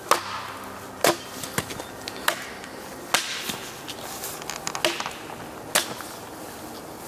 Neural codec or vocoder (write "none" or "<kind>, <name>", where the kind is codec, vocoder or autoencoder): none